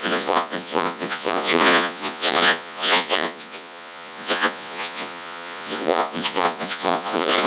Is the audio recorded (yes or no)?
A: no